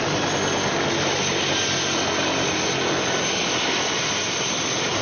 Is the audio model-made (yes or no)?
no